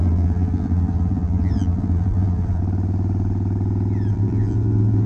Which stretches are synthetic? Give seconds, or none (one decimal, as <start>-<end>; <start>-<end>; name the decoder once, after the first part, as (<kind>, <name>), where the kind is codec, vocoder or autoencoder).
0.0-2.6 (vocoder, BigVGAN v2); 4.1-5.1